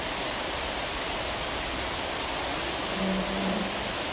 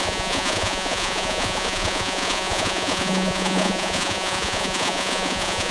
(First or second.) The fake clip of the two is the second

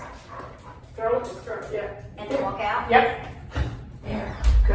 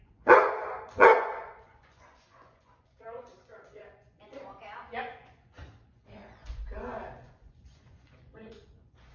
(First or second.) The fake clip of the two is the second